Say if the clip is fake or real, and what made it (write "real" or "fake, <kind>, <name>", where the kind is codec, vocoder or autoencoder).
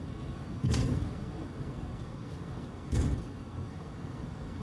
fake, codec, SNAC